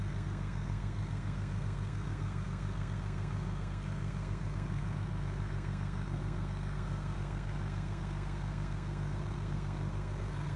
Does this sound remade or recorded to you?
remade